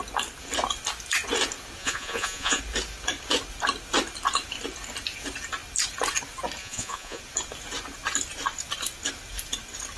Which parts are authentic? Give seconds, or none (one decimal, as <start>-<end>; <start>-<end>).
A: 0.0-1.8; 2.6-6.6; 7.2-10.0